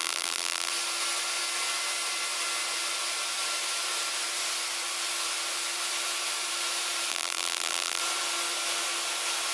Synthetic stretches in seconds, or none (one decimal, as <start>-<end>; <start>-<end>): 0.0-0.7; 7.1-8.0